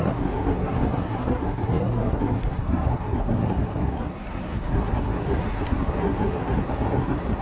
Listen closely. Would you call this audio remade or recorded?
remade